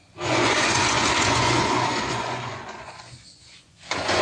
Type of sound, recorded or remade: remade